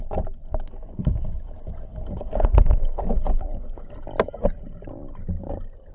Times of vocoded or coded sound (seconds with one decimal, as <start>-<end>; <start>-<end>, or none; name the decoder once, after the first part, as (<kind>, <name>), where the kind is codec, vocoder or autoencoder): none